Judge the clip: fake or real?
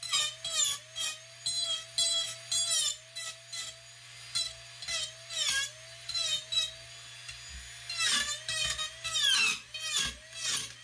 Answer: real